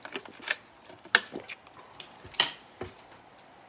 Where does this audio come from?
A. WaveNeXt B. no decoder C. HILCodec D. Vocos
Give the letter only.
B